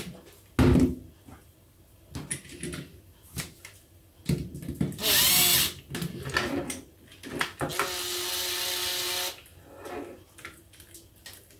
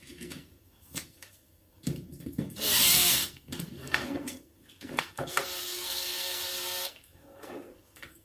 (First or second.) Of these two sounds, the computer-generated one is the second